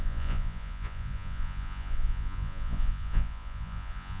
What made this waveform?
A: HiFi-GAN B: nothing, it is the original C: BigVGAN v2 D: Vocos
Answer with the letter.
D